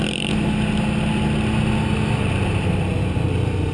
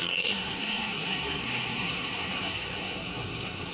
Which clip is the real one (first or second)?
first